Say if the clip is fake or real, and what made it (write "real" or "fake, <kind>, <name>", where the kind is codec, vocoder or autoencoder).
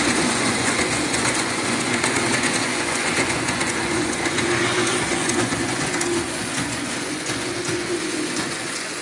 fake, vocoder, Vocos